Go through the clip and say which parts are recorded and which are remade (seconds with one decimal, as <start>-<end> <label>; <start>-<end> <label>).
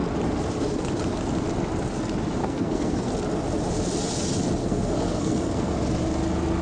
0.0-2.4 recorded; 2.4-3.1 remade; 3.1-4.6 recorded; 4.6-5.7 remade; 5.7-6.6 recorded